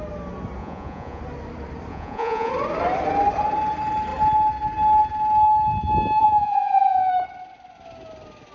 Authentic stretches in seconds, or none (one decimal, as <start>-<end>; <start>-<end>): 0.0-0.6; 1.2-1.9; 2.5-6.2; 7.1-8.5